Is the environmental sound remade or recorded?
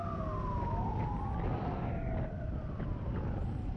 recorded